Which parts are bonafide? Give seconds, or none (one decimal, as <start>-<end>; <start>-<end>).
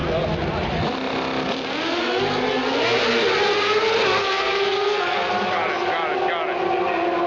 0.0-4.2; 5.3-7.3